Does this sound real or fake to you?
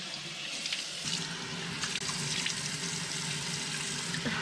real